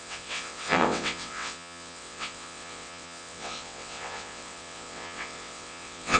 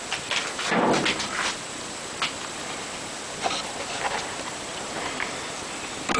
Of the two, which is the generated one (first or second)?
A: first